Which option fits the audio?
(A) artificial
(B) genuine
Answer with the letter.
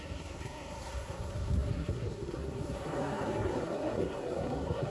A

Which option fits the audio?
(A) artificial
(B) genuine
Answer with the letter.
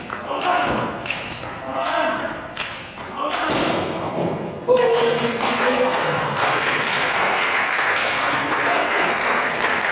A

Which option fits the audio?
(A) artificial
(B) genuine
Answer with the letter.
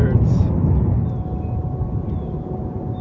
B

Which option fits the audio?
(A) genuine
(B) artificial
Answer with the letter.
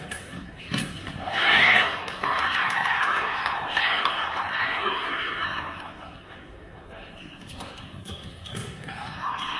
B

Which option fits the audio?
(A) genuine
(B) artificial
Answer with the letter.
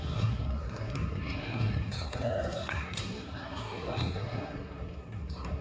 B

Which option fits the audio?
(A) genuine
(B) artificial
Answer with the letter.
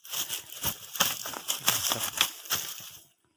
A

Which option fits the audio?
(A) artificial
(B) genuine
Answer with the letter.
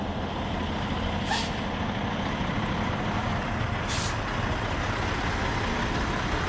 B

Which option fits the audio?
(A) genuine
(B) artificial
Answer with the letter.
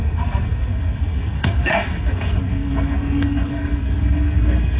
B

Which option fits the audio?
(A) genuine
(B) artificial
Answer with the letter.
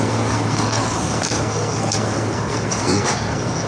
B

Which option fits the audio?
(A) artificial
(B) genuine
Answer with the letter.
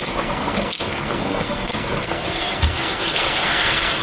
A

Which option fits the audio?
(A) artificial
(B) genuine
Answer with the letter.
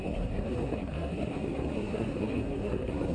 A